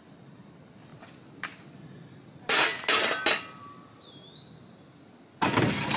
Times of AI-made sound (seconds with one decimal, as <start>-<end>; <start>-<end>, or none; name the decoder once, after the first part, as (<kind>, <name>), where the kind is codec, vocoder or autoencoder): none